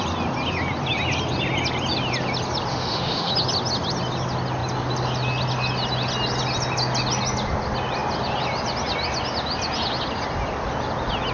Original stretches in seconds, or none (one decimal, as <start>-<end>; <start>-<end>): 0.0-2.7; 3.3-11.3